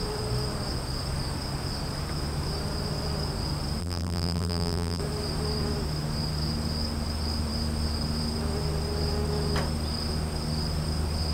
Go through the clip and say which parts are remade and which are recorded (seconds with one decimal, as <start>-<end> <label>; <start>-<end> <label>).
0.0-3.8 recorded; 3.8-5.0 remade; 5.0-11.3 recorded